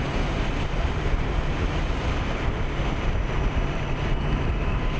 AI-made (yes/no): yes